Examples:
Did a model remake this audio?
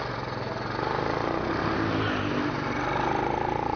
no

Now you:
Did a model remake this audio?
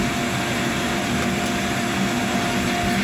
no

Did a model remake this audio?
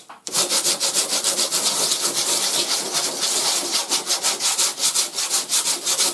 yes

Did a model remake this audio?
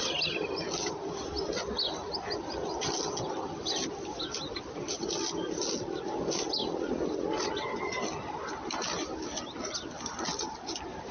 no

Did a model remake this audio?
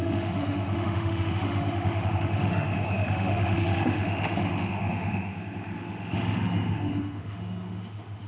yes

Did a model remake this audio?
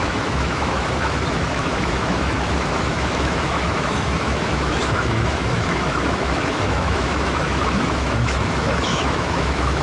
yes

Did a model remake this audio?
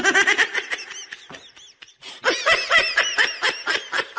no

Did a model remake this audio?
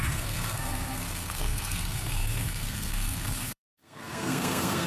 yes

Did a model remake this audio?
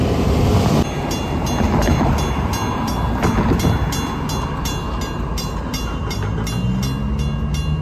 no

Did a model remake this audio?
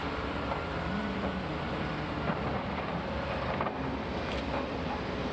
yes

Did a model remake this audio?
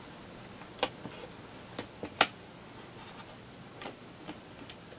no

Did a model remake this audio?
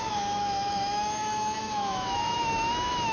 yes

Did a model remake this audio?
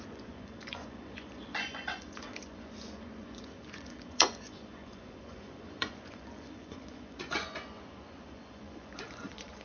yes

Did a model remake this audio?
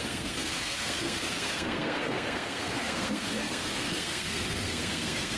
yes